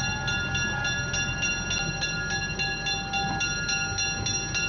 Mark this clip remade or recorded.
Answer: recorded